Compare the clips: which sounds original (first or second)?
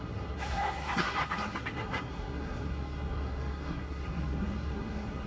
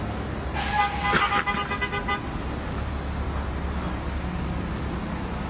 second